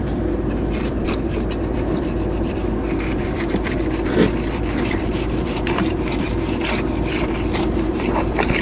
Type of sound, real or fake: fake